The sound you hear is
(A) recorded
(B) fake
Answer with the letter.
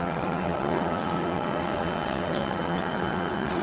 B